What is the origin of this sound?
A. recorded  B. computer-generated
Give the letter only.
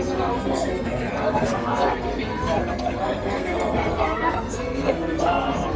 B